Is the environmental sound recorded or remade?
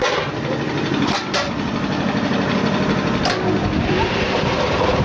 recorded